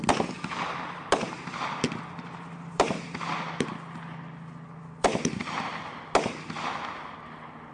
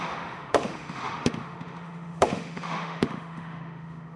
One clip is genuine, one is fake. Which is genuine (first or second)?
first